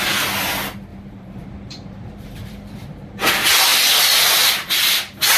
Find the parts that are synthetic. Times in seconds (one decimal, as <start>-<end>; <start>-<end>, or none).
0.9-3.3